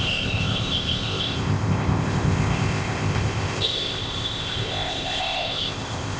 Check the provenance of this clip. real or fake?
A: fake